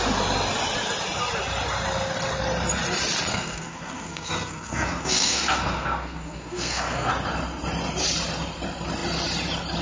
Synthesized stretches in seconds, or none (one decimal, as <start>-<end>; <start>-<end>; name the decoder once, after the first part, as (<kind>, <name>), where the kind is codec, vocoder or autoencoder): 3.3-7.1 (codec, SNAC)